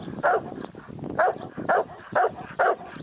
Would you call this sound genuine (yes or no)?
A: yes